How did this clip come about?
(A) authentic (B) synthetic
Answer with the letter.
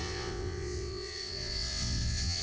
B